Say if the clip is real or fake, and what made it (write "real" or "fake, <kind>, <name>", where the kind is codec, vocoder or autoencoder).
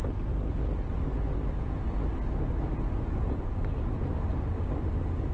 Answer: real